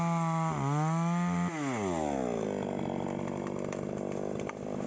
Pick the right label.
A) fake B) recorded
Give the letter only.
B